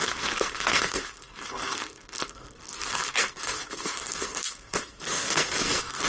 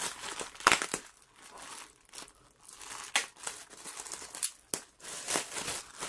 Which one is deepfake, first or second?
first